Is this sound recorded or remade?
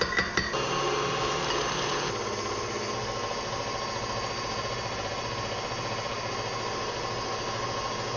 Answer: recorded